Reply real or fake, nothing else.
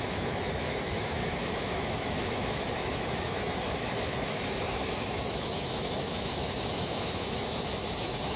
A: fake